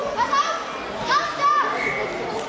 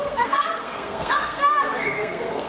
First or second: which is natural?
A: first